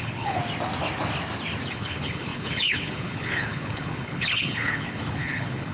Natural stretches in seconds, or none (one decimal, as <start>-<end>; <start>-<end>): 0.4-1.7